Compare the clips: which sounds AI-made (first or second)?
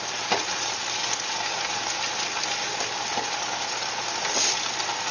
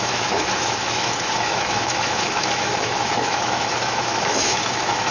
second